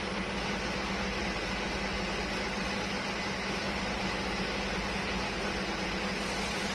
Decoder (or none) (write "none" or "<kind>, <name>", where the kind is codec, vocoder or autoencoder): none